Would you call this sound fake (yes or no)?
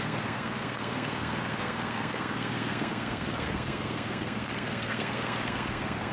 yes